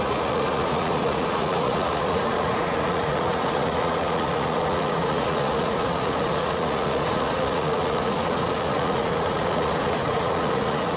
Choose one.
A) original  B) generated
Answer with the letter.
B